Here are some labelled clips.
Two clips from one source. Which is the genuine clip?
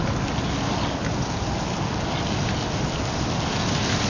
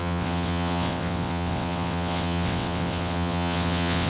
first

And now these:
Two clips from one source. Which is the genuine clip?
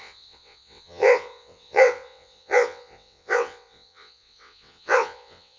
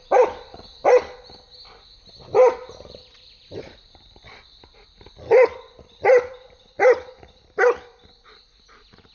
second